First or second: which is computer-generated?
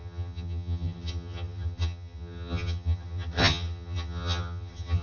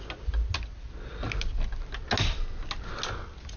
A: first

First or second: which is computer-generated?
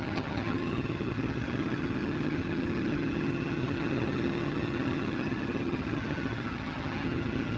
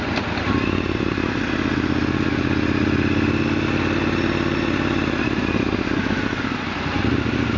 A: first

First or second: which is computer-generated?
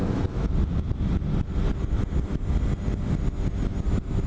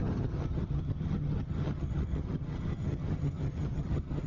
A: second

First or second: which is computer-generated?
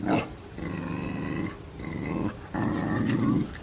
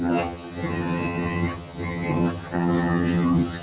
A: second